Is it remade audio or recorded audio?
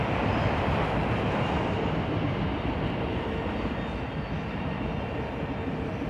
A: recorded